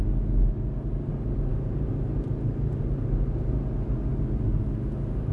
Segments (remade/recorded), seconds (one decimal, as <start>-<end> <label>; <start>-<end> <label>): 0.0-5.3 recorded